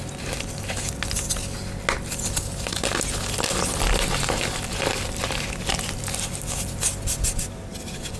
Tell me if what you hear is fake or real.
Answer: real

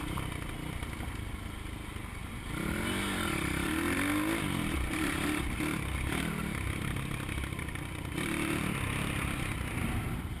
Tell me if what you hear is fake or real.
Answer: real